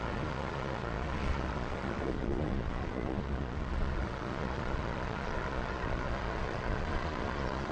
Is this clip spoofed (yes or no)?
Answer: yes